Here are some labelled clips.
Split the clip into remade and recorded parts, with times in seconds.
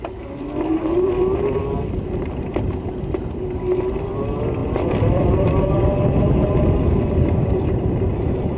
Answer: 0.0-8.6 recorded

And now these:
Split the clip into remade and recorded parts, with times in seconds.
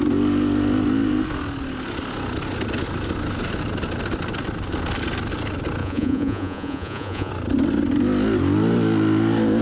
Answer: 0.0-5.8 recorded; 5.8-7.3 remade; 7.3-9.6 recorded